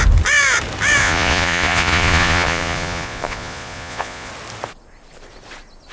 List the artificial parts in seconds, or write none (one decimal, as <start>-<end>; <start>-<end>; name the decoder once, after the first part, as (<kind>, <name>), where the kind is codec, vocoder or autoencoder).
1.0-4.3 (vocoder, Vocos)